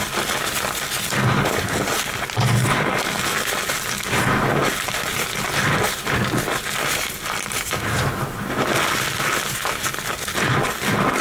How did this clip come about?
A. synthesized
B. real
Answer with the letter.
B